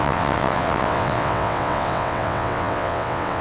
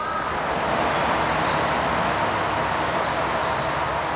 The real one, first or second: second